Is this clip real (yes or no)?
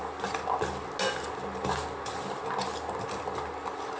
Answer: yes